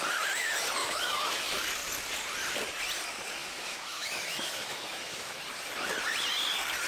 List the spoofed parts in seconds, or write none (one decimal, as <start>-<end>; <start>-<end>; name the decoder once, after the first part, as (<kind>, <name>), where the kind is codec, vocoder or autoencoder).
0.8-1.3 (autoencoder, DAC-VAE); 3.4-5.4